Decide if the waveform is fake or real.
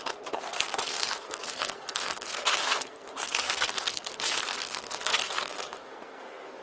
fake